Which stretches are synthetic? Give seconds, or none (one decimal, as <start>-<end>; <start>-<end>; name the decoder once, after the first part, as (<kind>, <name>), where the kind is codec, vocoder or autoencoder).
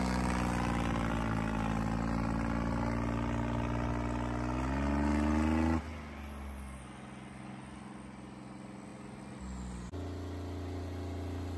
none